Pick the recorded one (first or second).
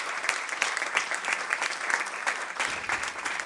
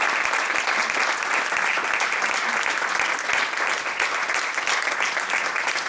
second